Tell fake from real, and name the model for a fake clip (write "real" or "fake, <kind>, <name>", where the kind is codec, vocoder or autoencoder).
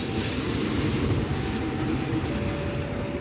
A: real